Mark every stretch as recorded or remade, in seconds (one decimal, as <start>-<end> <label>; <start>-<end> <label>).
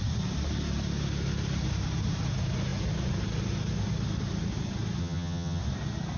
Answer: 0.0-5.0 recorded; 5.0-5.6 remade; 5.6-6.2 recorded